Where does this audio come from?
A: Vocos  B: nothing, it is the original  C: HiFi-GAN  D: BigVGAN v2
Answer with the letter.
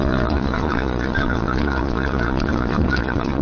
A